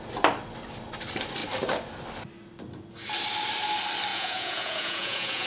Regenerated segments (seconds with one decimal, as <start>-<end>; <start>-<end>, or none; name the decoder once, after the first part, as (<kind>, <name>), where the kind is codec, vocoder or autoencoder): 4.1-5.5 (vocoder, Vocos)